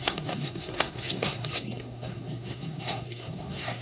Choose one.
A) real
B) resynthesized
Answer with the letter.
B